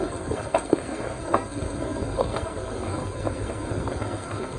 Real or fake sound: fake